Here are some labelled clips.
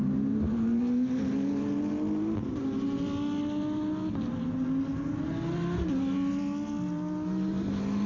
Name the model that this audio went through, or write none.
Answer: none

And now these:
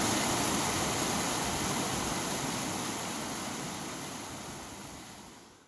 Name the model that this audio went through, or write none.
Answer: none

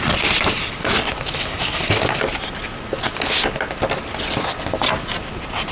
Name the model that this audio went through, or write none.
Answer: none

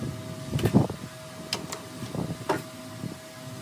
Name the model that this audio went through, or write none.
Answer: none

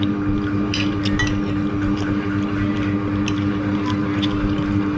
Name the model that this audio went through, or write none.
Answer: none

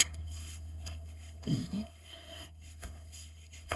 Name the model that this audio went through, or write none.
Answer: codec, SNAC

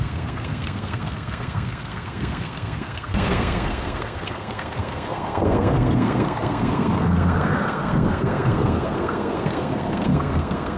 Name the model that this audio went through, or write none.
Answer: codec, SNAC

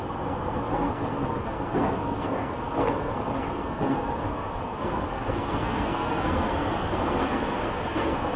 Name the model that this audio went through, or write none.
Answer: codec, SNAC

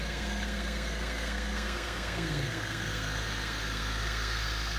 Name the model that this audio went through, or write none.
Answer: codec, SNAC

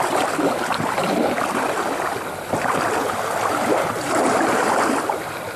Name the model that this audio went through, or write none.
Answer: none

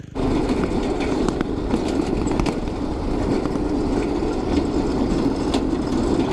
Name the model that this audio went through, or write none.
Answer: none